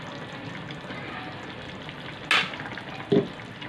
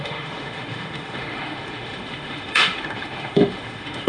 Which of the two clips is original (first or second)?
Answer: first